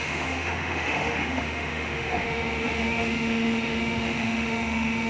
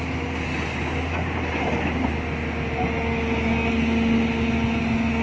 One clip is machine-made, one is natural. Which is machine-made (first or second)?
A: first